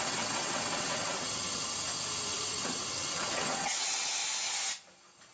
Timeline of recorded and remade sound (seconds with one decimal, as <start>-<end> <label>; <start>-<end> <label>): 0.0-1.6 remade; 1.6-2.3 recorded; 2.3-4.2 remade; 4.2-5.3 recorded